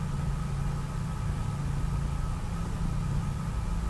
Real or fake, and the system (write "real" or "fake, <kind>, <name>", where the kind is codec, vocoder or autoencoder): real